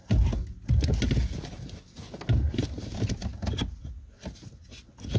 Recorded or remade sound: recorded